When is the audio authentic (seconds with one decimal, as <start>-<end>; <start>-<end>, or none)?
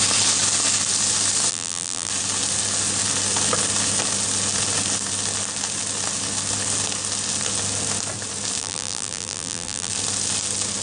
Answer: 0.0-1.5; 2.1-8.6; 9.9-10.8